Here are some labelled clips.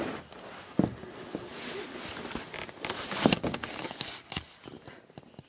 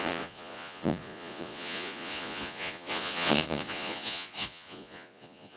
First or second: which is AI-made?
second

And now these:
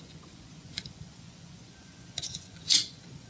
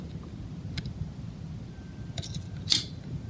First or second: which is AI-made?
first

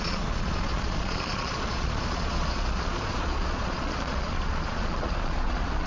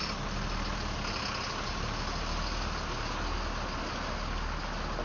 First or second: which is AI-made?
first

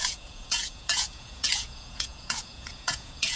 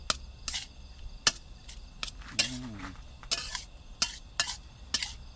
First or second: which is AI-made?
first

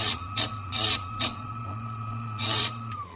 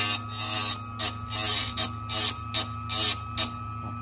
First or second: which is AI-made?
first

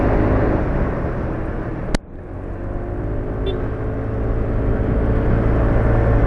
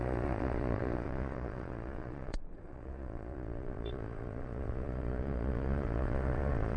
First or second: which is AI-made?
second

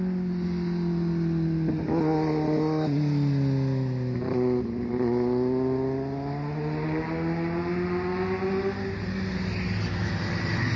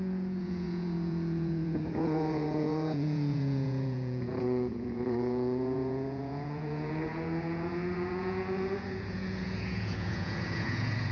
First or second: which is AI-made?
second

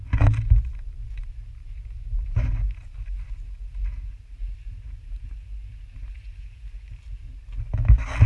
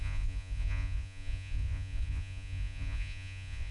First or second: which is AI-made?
second